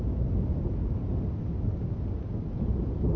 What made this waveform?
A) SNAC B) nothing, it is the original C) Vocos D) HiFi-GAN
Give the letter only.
B